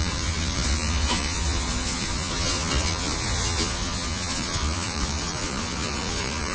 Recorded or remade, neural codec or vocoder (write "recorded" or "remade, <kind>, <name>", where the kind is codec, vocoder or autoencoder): remade, vocoder, Vocos